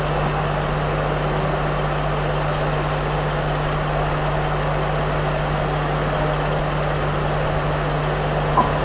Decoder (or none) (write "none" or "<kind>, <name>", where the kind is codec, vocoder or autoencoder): none